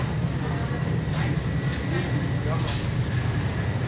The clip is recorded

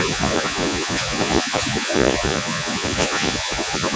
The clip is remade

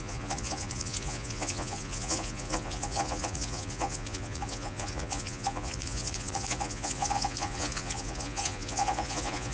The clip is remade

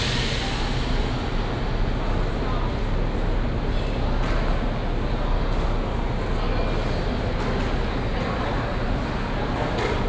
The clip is recorded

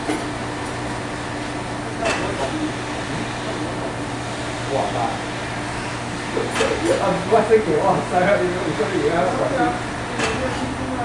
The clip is recorded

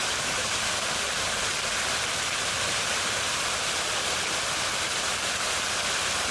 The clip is recorded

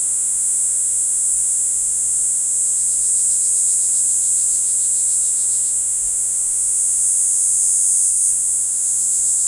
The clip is remade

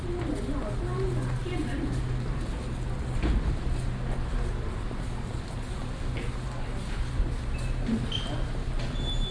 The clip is recorded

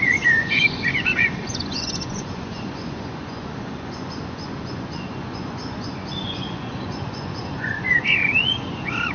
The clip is remade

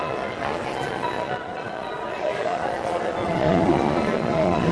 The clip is remade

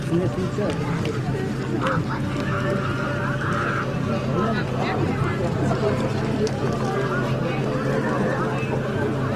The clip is recorded